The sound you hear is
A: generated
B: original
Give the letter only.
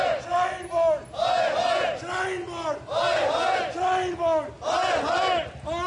B